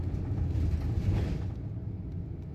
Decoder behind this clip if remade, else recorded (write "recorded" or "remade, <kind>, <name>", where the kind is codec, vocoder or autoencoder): recorded